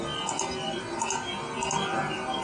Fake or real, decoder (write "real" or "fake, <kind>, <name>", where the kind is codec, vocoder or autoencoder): real